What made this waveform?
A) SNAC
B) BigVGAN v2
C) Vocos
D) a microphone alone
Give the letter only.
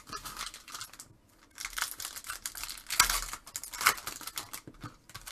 D